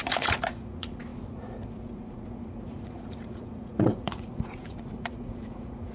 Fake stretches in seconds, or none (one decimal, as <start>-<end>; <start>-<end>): 0.0-5.9